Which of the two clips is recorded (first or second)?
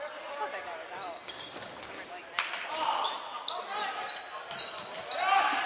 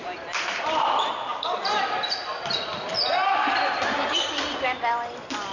first